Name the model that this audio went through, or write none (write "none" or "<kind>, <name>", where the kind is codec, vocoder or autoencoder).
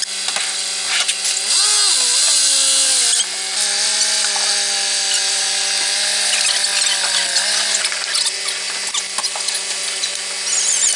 none